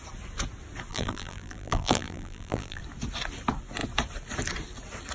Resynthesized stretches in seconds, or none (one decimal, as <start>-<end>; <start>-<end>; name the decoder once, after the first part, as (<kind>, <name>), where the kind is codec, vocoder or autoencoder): 0.9-2.8 (vocoder, BigVGAN v2)